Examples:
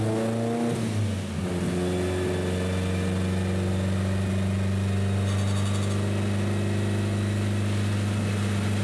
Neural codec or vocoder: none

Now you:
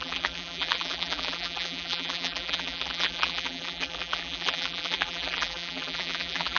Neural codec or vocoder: vocoder, BigVGAN v2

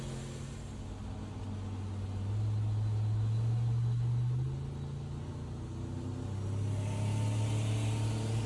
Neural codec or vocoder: none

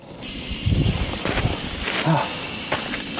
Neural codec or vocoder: vocoder, BigVGAN v2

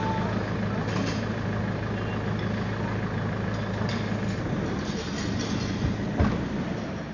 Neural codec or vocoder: none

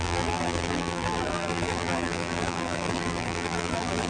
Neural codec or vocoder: vocoder, BigVGAN v2